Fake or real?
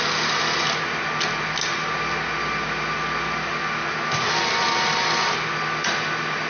real